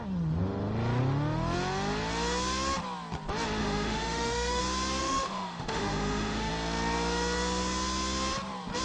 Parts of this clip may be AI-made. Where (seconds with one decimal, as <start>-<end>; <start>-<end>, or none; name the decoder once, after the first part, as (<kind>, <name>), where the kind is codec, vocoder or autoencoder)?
3.6-4.6 (autoencoder, DAC-VAE); 5.0-6.5